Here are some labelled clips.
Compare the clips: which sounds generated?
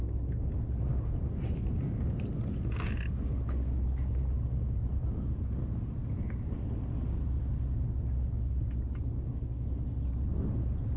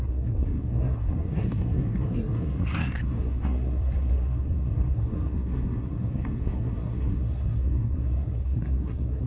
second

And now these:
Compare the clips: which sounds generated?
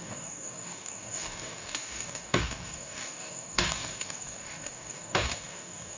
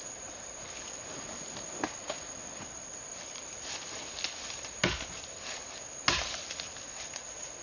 first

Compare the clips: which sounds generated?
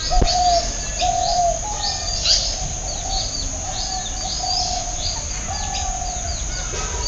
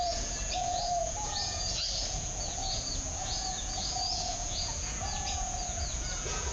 second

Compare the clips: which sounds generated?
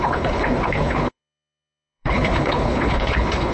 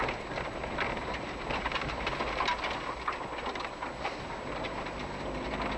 first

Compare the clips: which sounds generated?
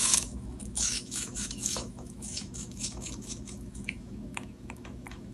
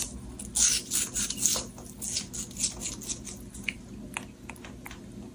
first